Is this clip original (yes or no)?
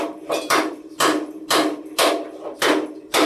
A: no